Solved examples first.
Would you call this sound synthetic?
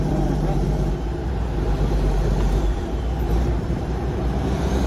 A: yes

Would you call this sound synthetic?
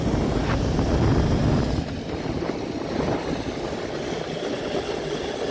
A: no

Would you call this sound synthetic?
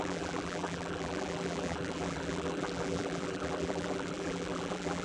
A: yes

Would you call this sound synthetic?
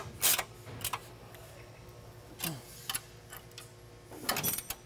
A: no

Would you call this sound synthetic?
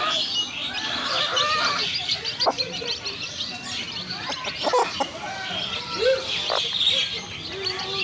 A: no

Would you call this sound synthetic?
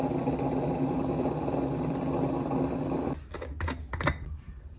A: no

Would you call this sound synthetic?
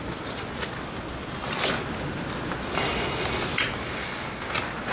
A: no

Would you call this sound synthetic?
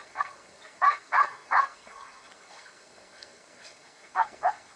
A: yes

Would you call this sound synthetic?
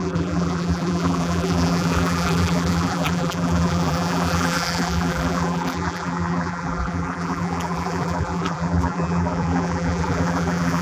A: yes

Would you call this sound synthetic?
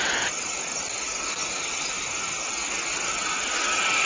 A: no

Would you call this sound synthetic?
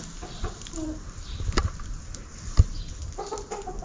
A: no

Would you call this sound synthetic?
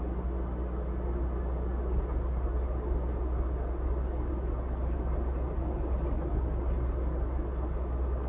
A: no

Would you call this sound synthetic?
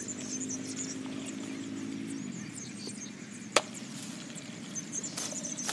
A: no